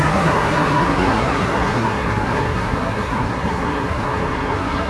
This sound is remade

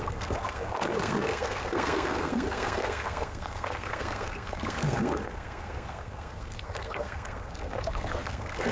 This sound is remade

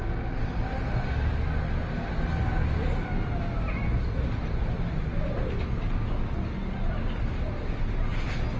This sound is recorded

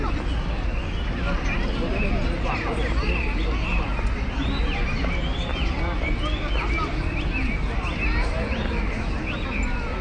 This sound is recorded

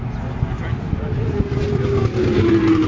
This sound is recorded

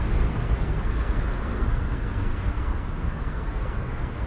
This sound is remade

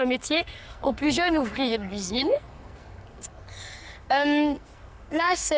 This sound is remade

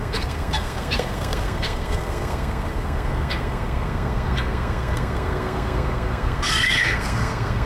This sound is remade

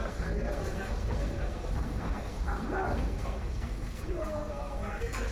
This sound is remade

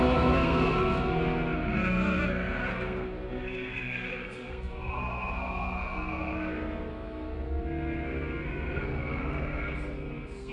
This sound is remade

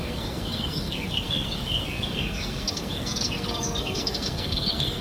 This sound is remade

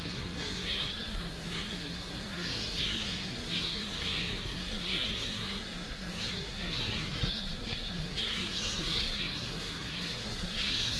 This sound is remade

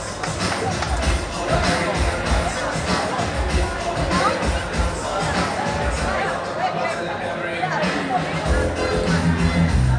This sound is recorded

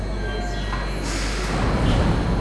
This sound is recorded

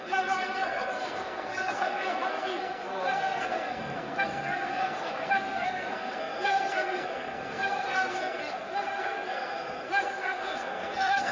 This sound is remade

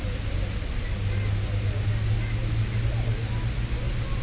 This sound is recorded